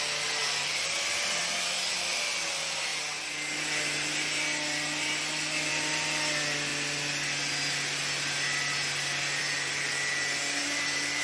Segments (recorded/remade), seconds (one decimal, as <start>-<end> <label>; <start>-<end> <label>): 0.0-11.2 recorded